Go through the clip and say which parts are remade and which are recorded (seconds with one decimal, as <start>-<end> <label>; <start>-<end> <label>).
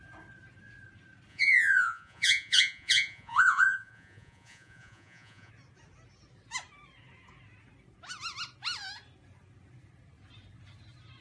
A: 0.0-1.3 recorded; 1.3-5.5 remade; 5.5-11.2 recorded